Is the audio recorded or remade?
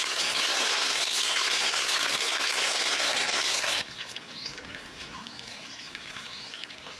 remade